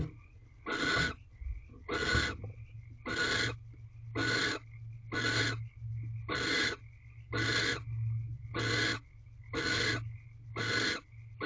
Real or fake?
real